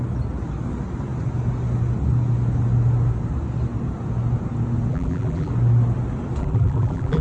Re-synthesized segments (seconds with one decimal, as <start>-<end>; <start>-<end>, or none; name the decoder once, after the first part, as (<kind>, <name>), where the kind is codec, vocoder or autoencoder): 4.9-5.5 (vocoder, BigVGAN v2); 6.4-7.2